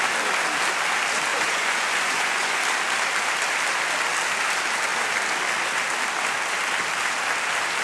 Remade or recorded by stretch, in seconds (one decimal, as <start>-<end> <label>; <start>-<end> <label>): 0.0-1.3 recorded; 1.3-2.6 remade; 2.6-7.8 recorded